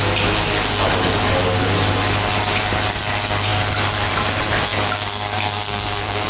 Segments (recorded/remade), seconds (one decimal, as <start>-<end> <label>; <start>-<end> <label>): 0.0-4.7 recorded; 4.7-6.3 remade